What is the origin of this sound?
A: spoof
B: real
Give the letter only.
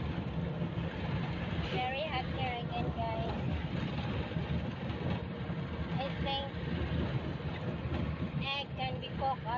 B